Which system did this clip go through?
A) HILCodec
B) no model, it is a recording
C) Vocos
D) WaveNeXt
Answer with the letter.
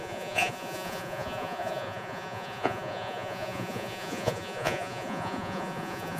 C